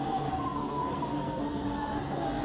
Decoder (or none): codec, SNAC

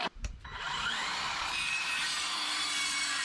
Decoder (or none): vocoder, BigVGAN v2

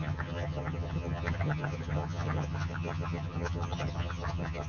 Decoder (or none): vocoder, HiFi-GAN